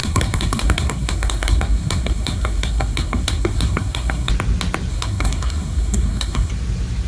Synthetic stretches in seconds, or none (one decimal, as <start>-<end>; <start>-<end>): 0.0-4.3; 4.9-6.5